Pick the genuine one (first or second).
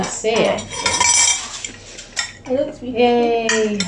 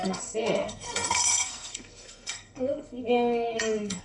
first